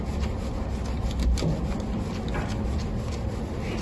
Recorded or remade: recorded